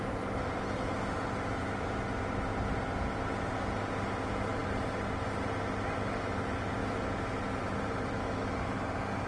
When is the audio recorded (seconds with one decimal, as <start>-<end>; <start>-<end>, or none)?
0.0-9.3